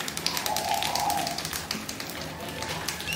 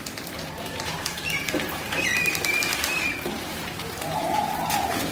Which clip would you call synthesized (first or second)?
second